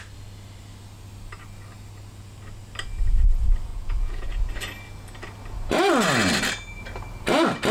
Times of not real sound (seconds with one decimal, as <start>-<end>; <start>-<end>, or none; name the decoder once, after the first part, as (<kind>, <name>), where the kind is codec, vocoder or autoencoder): 3.7-4.5 (vocoder, Vocos)